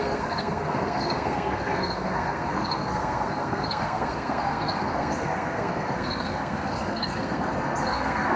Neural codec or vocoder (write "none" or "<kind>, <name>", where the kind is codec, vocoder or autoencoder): codec, SNAC